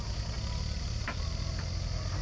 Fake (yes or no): no